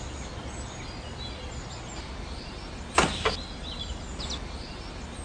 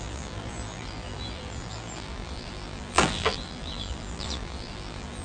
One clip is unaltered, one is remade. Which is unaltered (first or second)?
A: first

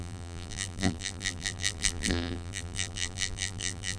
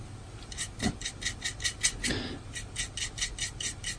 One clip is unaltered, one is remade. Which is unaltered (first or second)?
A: second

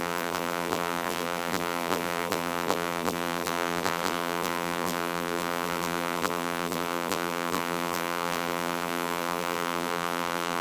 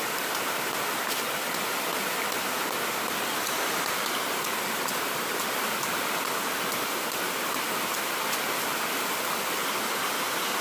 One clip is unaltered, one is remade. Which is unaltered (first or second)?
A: second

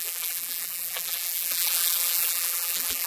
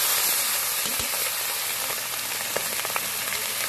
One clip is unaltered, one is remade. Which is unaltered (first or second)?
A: second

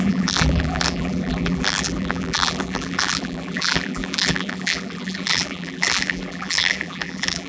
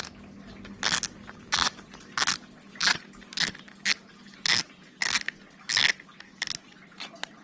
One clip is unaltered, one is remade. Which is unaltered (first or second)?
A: second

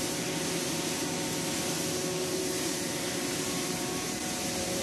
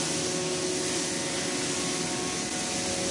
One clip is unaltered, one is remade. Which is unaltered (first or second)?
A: second